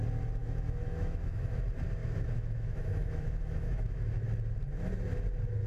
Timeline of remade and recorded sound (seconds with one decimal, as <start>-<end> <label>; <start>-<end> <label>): 0.0-0.4 recorded; 0.4-1.6 remade; 1.6-2.0 recorded; 2.0-4.1 remade; 4.1-5.7 recorded